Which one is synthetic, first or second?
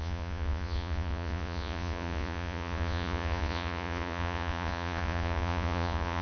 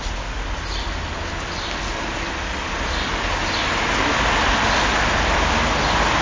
first